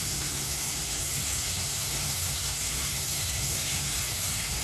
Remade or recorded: remade